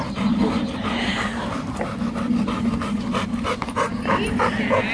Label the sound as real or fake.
real